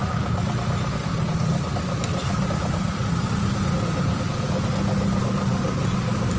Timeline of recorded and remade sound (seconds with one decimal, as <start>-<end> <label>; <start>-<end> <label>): 0.0-6.4 recorded